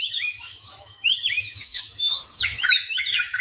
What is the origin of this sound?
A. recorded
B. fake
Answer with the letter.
B